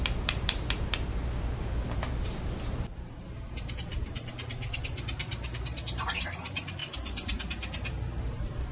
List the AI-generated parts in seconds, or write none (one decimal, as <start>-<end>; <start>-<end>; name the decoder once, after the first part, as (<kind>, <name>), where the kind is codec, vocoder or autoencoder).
0.0-1.2 (vocoder, BigVGAN v2); 2.2-6.8; 8.2-8.7